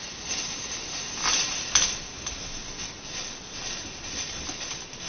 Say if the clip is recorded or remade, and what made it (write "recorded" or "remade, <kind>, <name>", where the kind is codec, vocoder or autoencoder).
recorded